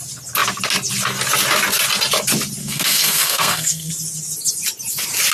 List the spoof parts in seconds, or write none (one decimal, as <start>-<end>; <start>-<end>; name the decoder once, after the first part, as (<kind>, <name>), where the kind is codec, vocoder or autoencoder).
2.6-3.9 (codec, SNAC)